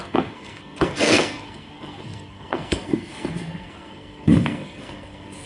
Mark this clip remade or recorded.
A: remade